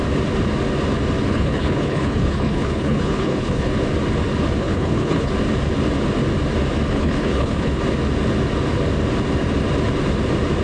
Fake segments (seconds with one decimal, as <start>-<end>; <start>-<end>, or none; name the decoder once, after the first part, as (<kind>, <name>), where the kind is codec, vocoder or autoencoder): 1.3-3.7 (codec, HILCodec); 4.6-5.3; 6.9-7.8